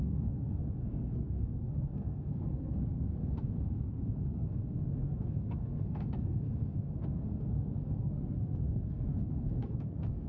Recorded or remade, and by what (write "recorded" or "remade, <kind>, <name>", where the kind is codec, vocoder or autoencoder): remade, codec, SNAC